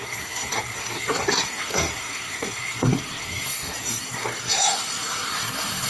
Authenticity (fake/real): fake